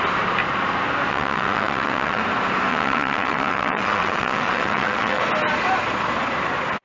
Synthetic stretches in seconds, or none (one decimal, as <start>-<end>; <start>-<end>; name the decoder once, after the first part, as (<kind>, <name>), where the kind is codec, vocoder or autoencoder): 1.1-2.2 (vocoder, WaveNeXt); 2.7-5.2